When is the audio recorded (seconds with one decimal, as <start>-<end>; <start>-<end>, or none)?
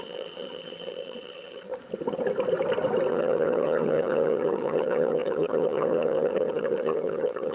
1.7-3.1